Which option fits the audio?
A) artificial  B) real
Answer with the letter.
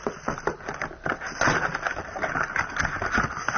B